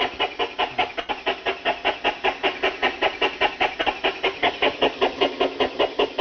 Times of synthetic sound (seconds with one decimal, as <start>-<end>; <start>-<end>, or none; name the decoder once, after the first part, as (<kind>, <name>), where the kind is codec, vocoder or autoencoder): none